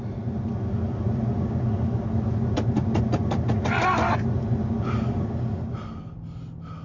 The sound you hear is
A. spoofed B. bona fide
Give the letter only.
B